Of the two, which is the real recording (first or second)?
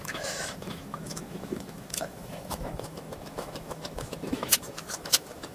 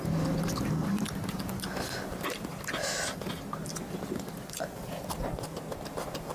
second